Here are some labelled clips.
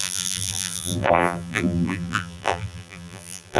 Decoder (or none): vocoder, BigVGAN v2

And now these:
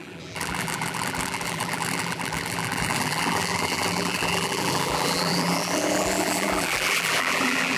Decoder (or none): vocoder, BigVGAN v2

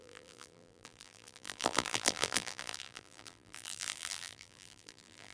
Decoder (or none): vocoder, BigVGAN v2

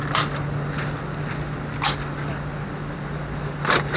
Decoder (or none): none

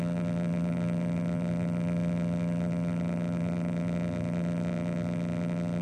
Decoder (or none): vocoder, BigVGAN v2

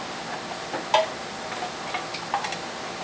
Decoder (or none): none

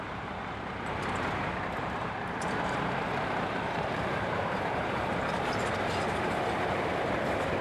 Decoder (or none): vocoder, BigVGAN v2